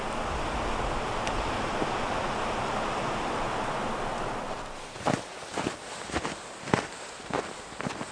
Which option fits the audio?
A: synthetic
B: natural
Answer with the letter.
B